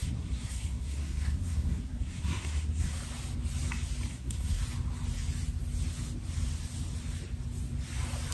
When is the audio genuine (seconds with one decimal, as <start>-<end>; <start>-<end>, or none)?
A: 3.0-4.1; 4.6-8.3